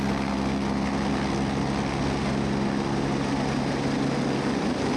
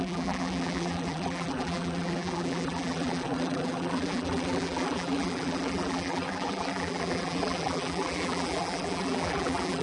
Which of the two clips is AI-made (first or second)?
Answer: second